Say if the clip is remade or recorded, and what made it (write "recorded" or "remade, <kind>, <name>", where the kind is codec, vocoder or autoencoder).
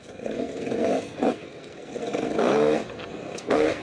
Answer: remade, codec, SNAC